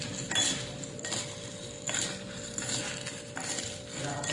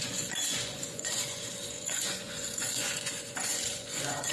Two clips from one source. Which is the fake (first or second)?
second